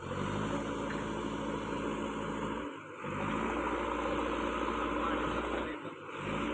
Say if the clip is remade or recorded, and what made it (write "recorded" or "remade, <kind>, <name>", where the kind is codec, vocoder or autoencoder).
recorded